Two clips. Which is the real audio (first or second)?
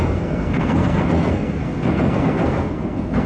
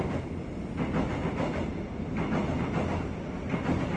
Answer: second